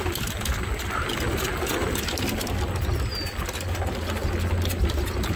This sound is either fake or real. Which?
real